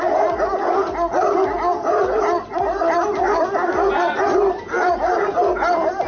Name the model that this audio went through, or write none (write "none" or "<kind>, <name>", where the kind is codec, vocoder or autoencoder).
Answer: none